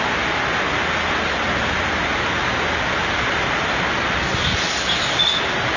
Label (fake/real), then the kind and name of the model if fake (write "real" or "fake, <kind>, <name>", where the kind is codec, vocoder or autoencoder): real